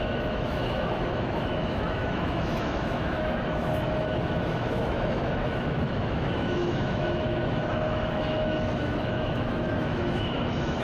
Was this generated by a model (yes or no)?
yes